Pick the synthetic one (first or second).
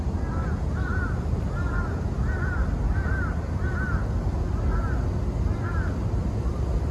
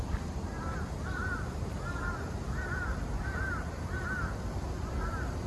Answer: second